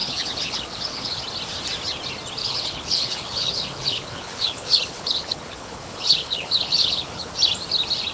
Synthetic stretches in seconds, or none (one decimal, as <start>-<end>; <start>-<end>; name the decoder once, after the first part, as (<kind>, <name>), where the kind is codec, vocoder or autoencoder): 0.0-1.2 (codec, HILCodec); 2.4-7.3

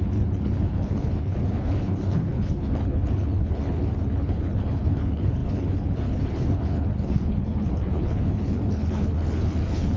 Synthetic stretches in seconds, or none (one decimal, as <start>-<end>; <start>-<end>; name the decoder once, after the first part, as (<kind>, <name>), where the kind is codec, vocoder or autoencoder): 0.0-10.0 (codec, HILCodec)

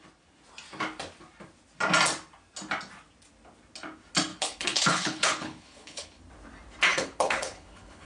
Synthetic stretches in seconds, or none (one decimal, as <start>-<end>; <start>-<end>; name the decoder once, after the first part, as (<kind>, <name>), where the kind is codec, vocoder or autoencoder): 4.3-6.2 (codec, HILCodec); 6.9-8.1